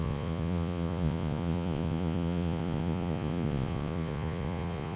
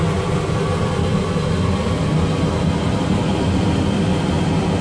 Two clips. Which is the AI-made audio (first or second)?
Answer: first